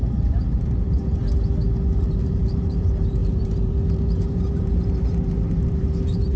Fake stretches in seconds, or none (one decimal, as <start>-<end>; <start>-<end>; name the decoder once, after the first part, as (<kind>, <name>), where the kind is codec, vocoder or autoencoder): 0.0-1.2 (vocoder, BigVGAN v2); 2.0-6.4

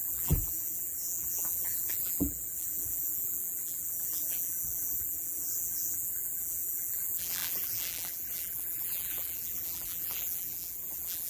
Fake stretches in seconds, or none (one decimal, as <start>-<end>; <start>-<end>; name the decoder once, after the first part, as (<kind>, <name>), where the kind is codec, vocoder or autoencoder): 0.0-11.3 (vocoder, BigVGAN v2)

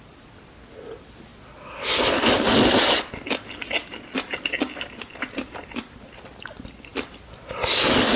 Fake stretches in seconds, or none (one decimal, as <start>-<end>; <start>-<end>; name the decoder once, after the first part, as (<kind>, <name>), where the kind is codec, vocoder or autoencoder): none

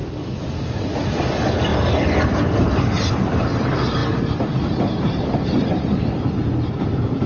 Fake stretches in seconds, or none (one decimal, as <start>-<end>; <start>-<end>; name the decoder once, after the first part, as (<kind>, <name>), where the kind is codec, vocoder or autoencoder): 4.0-5.7 (vocoder, BigVGAN v2)

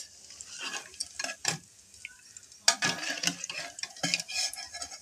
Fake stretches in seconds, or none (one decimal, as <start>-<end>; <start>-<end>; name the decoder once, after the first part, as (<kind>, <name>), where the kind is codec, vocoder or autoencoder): none

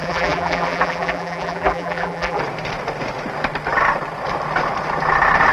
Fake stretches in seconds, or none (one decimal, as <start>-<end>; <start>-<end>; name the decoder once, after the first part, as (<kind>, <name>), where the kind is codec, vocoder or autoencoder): 0.0-2.4 (vocoder, BigVGAN v2)

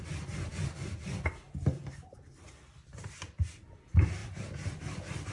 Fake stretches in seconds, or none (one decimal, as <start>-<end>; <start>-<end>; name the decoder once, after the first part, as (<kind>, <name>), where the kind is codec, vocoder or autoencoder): 0.5-3.7 (vocoder, BigVGAN v2); 4.2-5.3

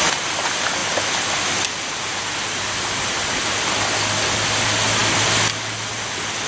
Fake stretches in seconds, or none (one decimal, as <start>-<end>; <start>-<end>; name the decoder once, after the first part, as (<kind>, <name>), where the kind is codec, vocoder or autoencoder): none